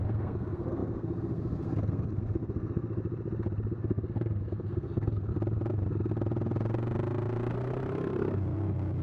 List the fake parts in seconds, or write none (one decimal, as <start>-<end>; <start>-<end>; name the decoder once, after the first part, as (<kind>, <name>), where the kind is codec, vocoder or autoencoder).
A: 0.0-3.0 (codec, SNAC); 3.8-5.3; 7.5-9.0